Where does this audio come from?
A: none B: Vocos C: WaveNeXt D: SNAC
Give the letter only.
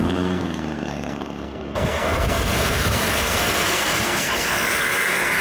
D